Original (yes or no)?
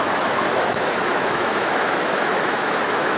no